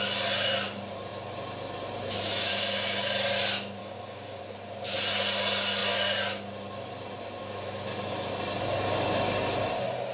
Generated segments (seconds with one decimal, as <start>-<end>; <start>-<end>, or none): 3.8-4.4

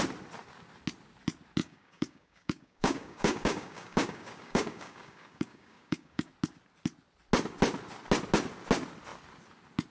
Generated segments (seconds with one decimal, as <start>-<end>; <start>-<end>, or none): 1.6-6.3